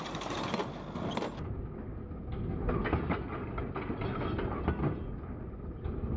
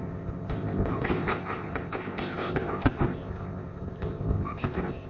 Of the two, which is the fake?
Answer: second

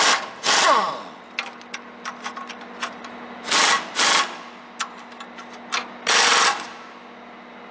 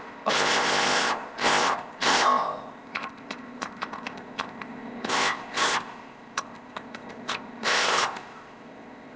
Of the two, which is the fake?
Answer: second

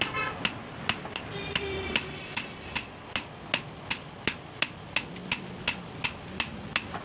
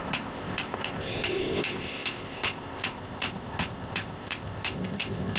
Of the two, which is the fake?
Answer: second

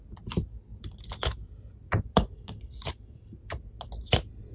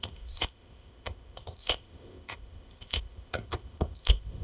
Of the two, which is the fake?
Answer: second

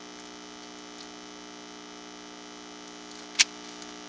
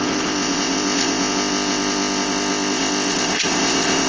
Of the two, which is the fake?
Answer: second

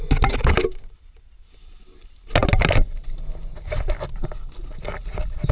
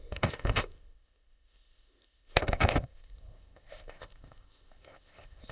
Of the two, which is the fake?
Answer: second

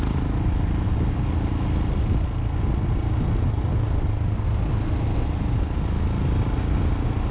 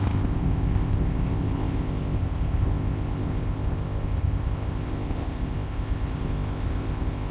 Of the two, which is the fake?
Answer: second